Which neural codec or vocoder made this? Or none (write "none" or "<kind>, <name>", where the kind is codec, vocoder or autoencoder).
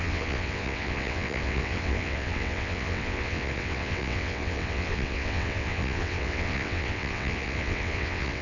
vocoder, WaveNeXt